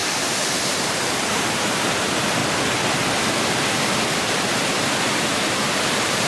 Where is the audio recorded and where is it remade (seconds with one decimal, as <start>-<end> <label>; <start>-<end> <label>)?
0.0-2.4 remade; 2.4-4.1 recorded; 4.1-6.3 remade